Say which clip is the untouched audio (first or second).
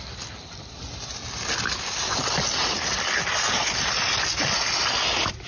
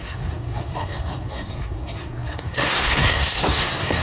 first